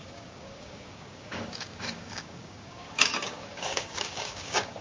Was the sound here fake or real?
fake